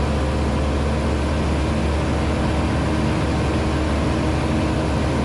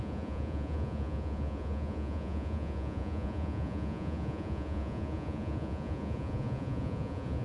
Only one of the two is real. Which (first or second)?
first